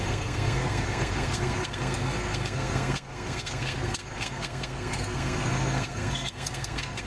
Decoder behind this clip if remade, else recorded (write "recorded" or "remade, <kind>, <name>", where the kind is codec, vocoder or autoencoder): remade, codec, SNAC